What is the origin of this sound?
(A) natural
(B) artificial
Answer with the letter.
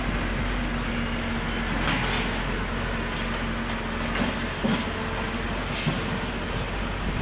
A